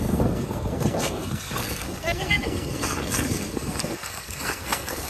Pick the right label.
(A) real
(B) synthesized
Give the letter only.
B